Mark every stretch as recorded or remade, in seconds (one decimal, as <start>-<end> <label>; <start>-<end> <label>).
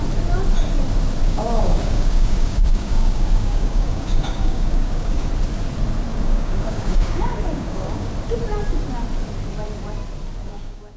0.0-1.2 recorded; 1.2-5.3 remade; 5.3-6.1 recorded; 6.1-8.1 remade; 8.1-10.4 recorded; 10.4-11.0 remade